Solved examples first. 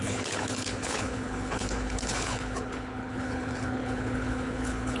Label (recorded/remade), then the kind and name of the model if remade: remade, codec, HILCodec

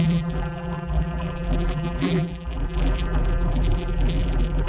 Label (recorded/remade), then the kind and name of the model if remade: remade, vocoder, BigVGAN v2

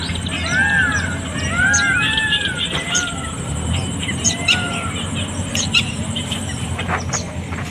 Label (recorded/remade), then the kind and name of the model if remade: remade, vocoder, BigVGAN v2